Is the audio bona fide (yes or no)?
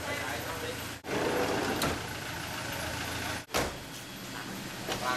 yes